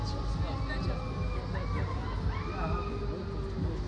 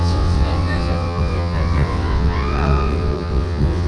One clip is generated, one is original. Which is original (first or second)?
first